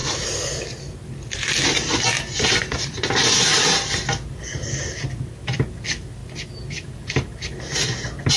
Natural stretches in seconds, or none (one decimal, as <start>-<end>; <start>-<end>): 0.0-8.4

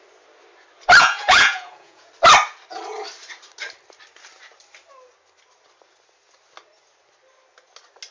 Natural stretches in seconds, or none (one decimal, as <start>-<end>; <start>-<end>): 0.0-1.0; 2.1-8.1

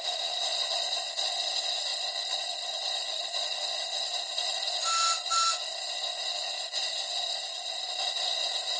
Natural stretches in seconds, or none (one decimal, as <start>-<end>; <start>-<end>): 0.0-0.6; 1.5-1.9; 4.0-8.8

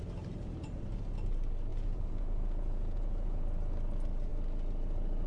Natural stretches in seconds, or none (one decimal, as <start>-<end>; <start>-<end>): 0.0-1.7; 3.4-5.3

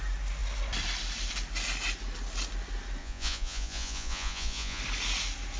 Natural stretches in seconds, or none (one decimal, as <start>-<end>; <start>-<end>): 0.0-3.0; 4.8-5.6

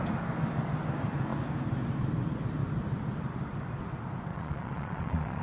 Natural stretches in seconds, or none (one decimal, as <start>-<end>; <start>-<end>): 0.0-4.3

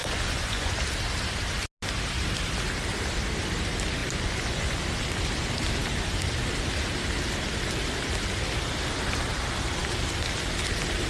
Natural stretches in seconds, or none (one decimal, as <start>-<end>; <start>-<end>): 0.7-4.0; 4.8-11.1